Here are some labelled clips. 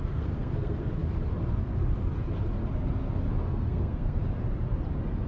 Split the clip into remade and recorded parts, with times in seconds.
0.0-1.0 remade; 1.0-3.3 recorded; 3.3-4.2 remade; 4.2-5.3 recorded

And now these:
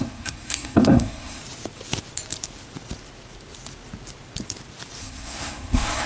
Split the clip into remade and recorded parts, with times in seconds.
0.0-1.4 remade; 1.4-5.0 recorded; 5.0-6.1 remade

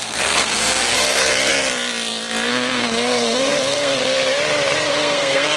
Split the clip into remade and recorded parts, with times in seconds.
0.0-1.5 remade; 1.5-2.5 recorded; 2.5-4.0 remade; 4.0-4.9 recorded; 4.9-5.6 remade